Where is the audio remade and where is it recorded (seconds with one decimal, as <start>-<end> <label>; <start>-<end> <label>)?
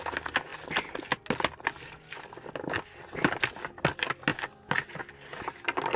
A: 0.0-6.0 recorded